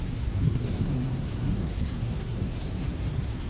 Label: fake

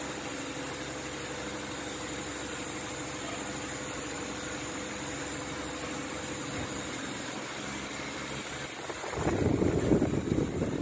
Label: real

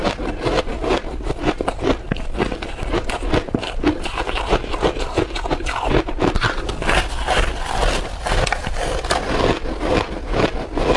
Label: real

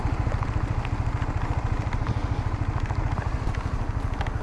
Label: real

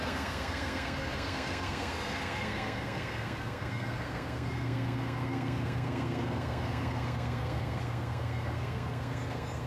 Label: fake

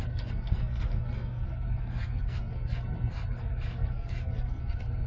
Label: fake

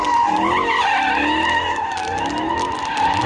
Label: real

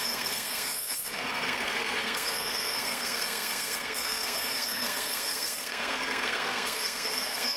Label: fake